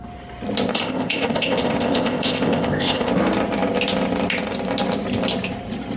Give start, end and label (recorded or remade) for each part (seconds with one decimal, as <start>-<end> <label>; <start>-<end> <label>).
0.0-0.7 recorded; 0.7-3.1 remade; 3.1-6.0 recorded